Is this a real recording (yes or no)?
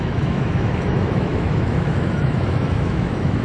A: no